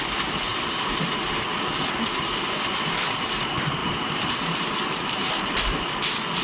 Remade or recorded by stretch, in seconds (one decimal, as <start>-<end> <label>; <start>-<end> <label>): 0.0-0.5 recorded; 0.5-1.2 remade; 1.2-3.8 recorded; 3.8-5.5 remade; 5.5-6.4 recorded